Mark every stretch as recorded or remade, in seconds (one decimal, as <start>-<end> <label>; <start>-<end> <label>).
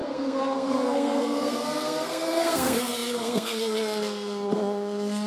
0.0-5.3 remade